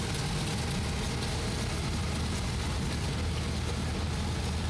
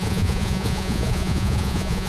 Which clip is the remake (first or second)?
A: second